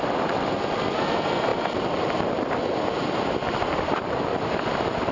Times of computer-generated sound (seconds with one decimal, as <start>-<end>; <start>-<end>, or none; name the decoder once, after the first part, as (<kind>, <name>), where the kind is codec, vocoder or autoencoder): none